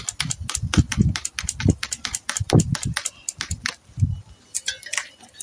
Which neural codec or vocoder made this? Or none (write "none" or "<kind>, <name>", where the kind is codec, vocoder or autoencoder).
none